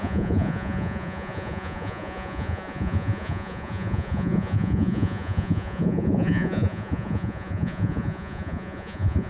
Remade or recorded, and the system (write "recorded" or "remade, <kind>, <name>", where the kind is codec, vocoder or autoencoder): remade, vocoder, Vocos